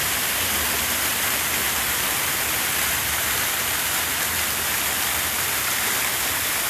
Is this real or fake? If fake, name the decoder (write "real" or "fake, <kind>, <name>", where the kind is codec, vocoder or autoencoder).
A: fake, vocoder, BigVGAN v2